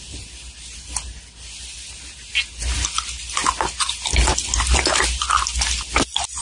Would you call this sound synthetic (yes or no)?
no